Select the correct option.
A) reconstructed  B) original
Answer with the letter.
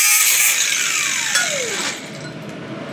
B